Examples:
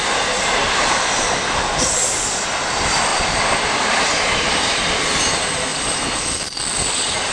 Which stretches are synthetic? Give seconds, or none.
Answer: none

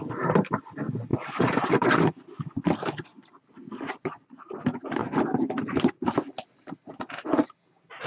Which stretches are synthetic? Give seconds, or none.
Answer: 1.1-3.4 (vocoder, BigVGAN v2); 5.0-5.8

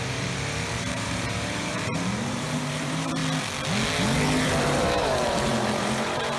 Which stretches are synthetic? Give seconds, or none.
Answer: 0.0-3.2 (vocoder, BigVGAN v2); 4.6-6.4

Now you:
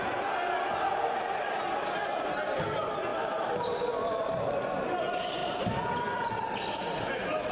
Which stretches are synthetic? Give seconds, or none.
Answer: 3.1-4.3 (vocoder, BigVGAN v2); 5.4-6.3

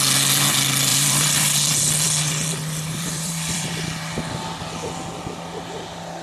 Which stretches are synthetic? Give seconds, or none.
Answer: 0.9-3.7 (vocoder, BigVGAN v2)